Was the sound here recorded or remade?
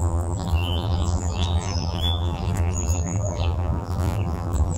remade